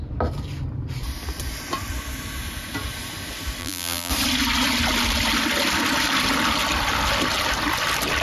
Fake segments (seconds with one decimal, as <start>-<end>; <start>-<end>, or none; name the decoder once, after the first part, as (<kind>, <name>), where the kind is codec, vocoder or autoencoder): 3.6-4.1 (vocoder, BigVGAN v2)